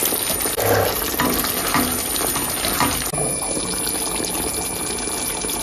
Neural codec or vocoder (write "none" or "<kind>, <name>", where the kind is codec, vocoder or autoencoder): none